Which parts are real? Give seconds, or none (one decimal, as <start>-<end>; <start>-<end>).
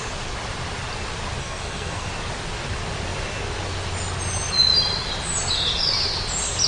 0.0-1.4; 2.1-6.7